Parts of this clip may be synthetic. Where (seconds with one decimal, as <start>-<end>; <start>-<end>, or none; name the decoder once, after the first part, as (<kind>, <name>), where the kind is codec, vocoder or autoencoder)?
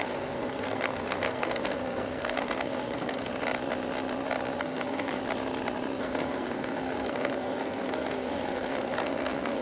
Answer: 0.0-3.3 (codec, SNAC); 4.6-5.2; 6.0-9.6